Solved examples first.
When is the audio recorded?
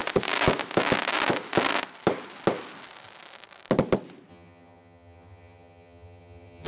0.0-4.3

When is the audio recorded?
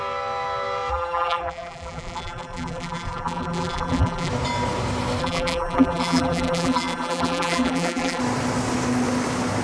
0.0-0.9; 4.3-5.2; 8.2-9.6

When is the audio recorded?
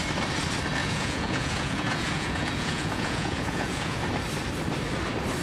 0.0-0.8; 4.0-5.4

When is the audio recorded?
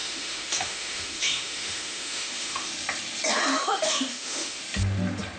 2.7-3.5; 4.6-5.4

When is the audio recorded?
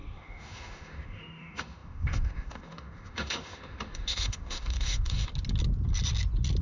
5.3-6.6